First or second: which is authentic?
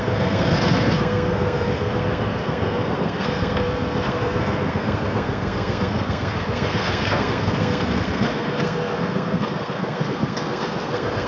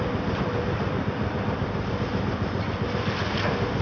second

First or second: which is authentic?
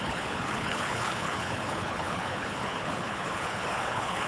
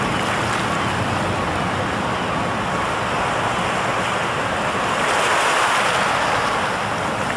second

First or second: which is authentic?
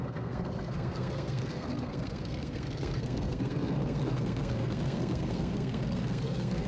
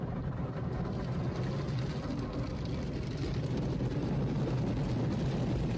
second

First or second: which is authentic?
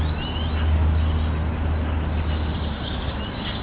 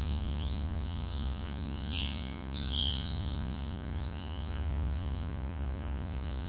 first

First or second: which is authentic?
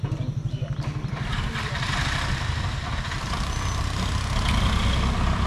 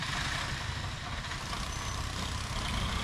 first